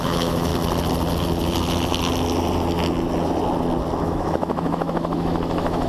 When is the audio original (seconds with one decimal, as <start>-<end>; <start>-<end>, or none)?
0.5-4.0